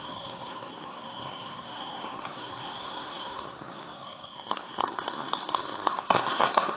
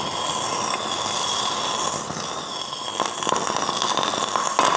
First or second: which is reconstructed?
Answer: first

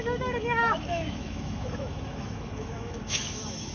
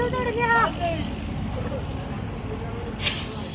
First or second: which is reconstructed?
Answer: first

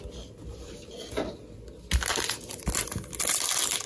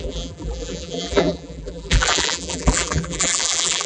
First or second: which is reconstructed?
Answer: second